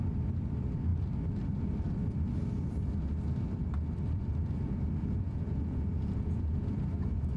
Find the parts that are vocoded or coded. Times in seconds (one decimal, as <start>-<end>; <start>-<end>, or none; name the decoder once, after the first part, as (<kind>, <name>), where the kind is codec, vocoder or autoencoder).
5.0-6.8 (vocoder, Vocos)